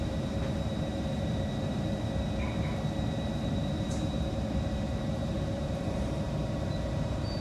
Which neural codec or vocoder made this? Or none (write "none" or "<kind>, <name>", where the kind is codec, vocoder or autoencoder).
vocoder, BigVGAN v2